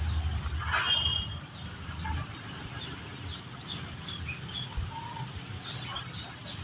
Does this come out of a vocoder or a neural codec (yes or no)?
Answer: no